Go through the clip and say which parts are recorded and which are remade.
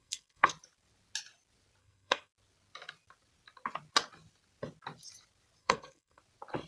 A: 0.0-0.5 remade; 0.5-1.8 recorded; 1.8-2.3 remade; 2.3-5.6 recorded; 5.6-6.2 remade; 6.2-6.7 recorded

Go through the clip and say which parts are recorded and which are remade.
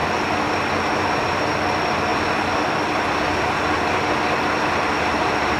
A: 0.0-5.6 recorded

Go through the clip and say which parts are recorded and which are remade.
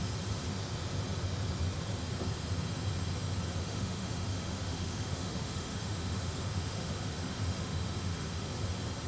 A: 0.0-3.6 recorded; 3.6-8.5 remade; 8.5-9.1 recorded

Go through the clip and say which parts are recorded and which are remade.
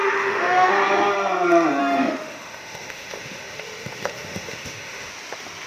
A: 0.0-0.7 remade; 0.7-1.8 recorded; 1.8-5.1 remade; 5.1-5.7 recorded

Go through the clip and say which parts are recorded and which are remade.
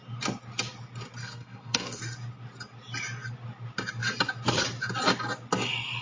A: 0.0-1.2 recorded; 1.2-2.0 remade; 2.0-6.0 recorded